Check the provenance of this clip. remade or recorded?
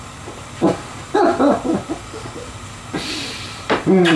remade